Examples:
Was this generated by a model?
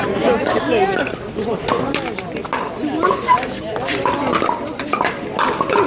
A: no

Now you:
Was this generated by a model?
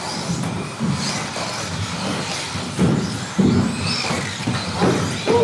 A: no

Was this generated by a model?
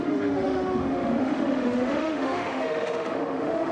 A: yes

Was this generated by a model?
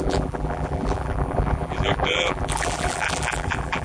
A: yes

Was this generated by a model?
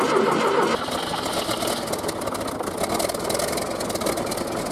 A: no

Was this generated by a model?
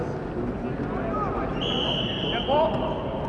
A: no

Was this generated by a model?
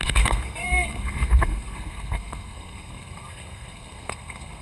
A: yes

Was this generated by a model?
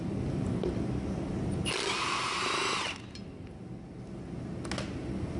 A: no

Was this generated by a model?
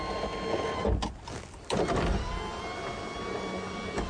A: no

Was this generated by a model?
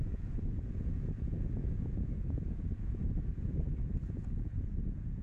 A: yes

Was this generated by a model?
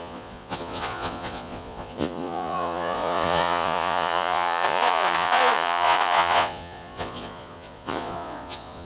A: yes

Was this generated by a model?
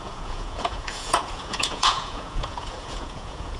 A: yes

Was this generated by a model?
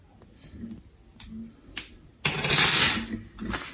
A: no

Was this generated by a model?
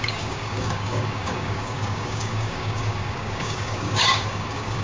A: yes